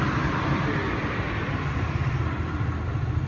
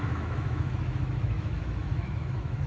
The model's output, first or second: second